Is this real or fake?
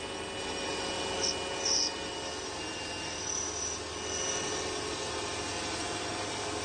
real